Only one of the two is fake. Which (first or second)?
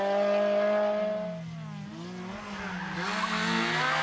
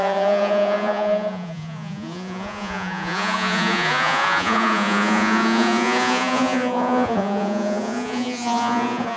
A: second